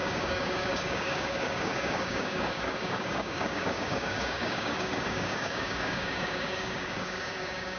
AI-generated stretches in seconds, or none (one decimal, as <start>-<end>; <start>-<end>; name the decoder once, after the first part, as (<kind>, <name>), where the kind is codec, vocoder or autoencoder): 0.0-7.8 (codec, DAC)